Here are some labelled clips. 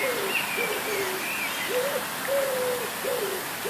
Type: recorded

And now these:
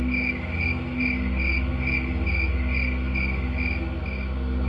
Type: recorded